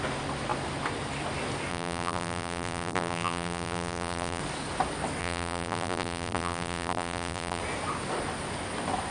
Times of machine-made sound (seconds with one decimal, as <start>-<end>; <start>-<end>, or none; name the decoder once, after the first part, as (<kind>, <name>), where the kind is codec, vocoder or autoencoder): 1.7-4.4 (vocoder, BigVGAN v2); 5.2-7.6